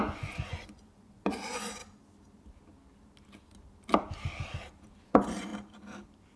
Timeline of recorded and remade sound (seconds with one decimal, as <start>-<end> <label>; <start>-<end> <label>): 0.0-1.8 remade; 1.8-5.0 recorded; 5.0-5.5 remade; 5.5-6.4 recorded

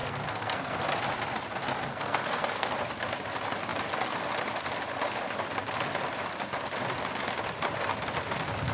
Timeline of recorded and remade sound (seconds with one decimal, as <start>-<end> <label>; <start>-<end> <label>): 0.0-0.8 remade; 0.8-1.9 recorded; 1.9-2.7 remade; 2.7-8.7 recorded

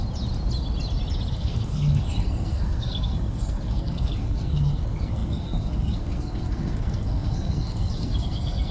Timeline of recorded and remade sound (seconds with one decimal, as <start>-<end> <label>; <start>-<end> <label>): 0.0-1.3 recorded; 1.3-8.7 remade